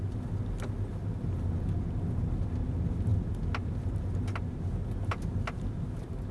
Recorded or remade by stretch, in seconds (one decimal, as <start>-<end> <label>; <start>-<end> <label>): 0.0-6.3 recorded